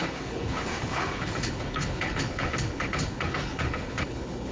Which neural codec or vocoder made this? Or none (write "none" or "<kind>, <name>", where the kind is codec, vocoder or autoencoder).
codec, HILCodec